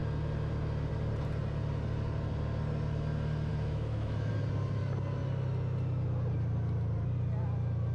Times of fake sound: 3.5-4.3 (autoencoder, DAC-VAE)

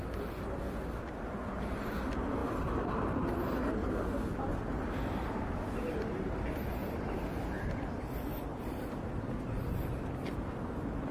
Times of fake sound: 3.8-4.9 (vocoder, BigVGAN v2); 6.8-7.4; 8.3-9.9

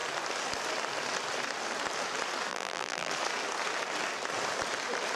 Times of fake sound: 2.5-3.1 (vocoder, BigVGAN v2)

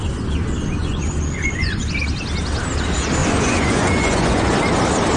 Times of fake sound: 0.8-1.8 (vocoder, Vocos); 3.2-4.5

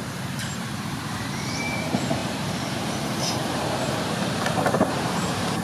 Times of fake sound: 0.0-5.6 (vocoder, BigVGAN v2)